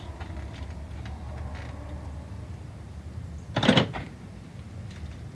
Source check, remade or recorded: recorded